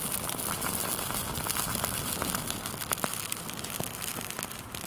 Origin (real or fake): real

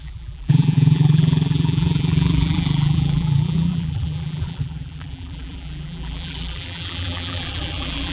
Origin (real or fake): fake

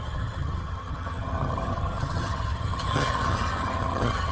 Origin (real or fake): fake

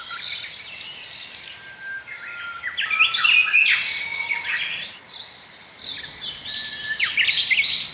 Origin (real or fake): real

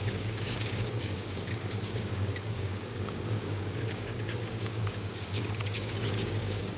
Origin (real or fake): fake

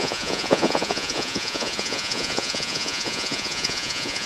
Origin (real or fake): fake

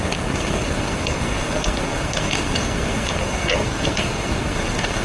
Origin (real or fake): fake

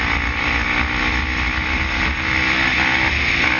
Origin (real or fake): real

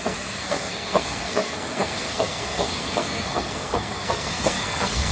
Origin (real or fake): fake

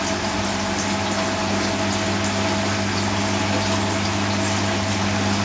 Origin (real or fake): real